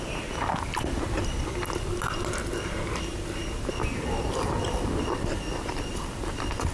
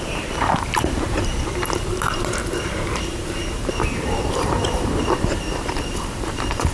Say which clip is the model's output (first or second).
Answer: second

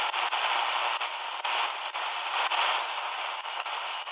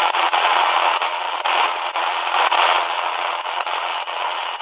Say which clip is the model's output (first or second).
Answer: second